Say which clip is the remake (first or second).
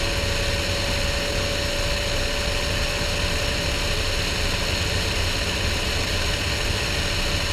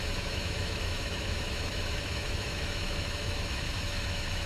second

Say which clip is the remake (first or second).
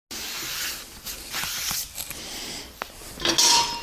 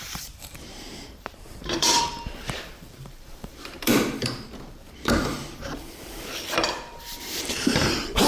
second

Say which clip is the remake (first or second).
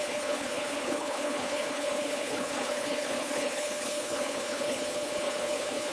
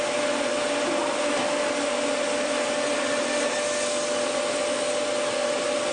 first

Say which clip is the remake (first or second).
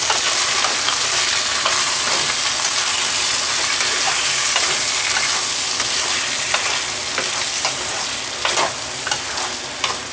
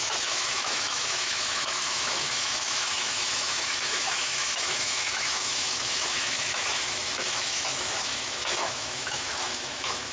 second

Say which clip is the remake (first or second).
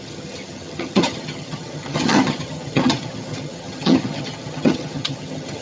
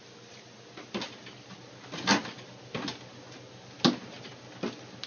first